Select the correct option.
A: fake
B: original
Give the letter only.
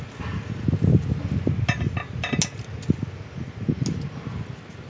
B